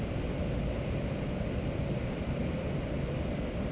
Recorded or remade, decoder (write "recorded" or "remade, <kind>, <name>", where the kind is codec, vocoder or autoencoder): recorded